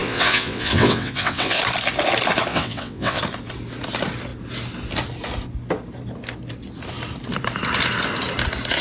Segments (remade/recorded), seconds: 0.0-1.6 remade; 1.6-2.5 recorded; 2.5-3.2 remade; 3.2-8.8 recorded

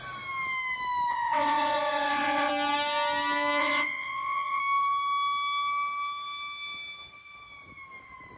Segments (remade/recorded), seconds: 0.0-1.1 recorded; 1.1-2.5 remade; 2.5-3.6 recorded; 3.6-4.6 remade; 4.6-8.4 recorded

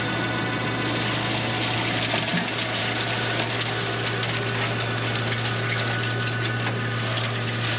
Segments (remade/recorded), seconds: 0.0-7.8 recorded

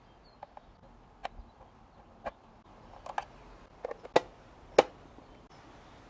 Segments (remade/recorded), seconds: 0.0-6.1 recorded

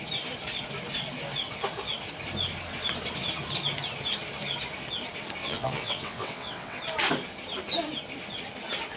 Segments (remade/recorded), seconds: 0.0-5.4 recorded; 5.4-6.8 remade; 6.8-9.0 recorded